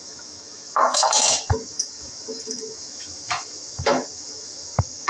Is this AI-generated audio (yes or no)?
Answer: yes